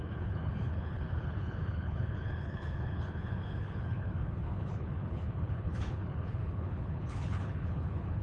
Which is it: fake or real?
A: fake